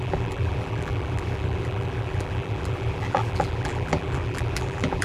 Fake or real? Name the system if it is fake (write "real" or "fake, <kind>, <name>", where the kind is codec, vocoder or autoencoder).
fake, vocoder, BigVGAN v2